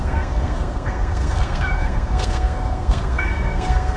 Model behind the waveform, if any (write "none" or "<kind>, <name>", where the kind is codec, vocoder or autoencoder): codec, SNAC